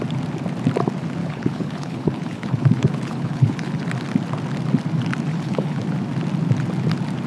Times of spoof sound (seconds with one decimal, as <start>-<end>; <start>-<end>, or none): 1.2-3.8; 5.3-5.8